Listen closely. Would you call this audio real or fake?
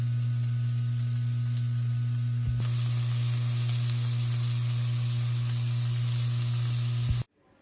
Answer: real